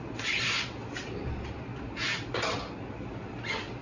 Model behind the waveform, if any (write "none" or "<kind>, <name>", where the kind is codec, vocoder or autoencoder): none